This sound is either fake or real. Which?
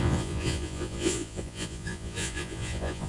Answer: fake